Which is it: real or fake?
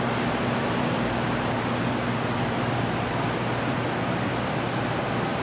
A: real